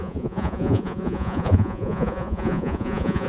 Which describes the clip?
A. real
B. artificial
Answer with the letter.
B